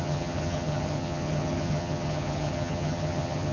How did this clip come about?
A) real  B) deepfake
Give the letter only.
B